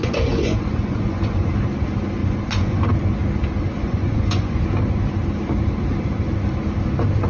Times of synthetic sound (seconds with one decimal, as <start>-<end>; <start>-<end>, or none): 0.0-1.5; 2.2-2.8; 3.8-4.6